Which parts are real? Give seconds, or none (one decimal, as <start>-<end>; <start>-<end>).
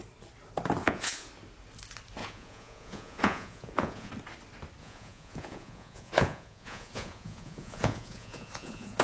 0.0-0.8; 1.3-2.2; 4.1-4.8